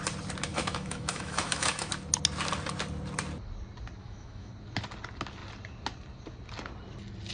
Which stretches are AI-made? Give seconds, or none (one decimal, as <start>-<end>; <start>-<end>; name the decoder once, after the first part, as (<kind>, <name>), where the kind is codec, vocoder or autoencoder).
0.5-1.9 (autoencoder, DAC-VAE); 4.0-4.5